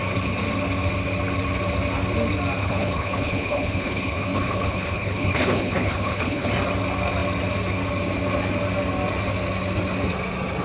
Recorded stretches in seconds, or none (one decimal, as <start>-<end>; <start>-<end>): 0.0-2.6; 6.5-10.6